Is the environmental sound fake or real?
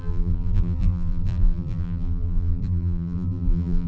fake